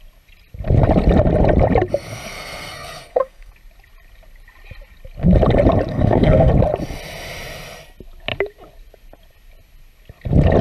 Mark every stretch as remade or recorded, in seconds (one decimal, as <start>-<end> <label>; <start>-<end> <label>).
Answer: 0.0-2.1 recorded; 2.1-3.5 remade; 3.5-5.9 recorded; 5.9-6.5 remade; 6.5-10.6 recorded